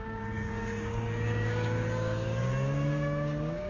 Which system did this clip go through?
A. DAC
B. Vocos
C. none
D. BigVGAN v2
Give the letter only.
A